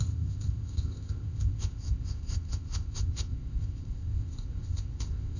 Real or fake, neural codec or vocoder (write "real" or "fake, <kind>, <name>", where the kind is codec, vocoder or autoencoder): fake, codec, ZipCodec